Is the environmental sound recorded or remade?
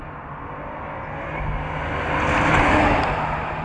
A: recorded